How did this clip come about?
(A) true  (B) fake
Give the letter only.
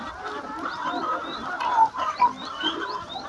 A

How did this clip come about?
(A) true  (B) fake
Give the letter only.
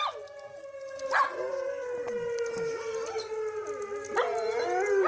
A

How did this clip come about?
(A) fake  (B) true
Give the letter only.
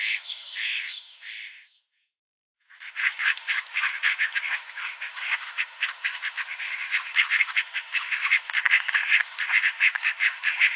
A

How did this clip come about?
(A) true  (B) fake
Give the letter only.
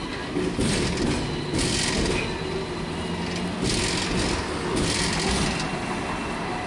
A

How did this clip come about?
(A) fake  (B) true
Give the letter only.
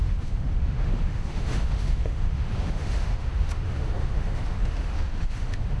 A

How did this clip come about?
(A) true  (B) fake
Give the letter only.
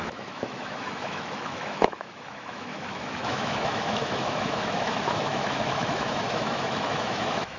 B